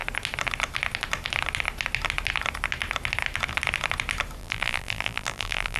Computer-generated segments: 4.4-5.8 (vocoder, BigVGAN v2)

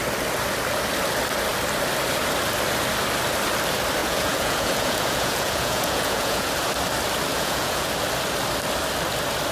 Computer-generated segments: 4.0-6.5 (vocoder, Vocos); 7.3-7.9

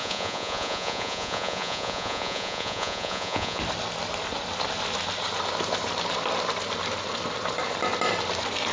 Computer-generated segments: 0.0-3.6 (vocoder, Vocos)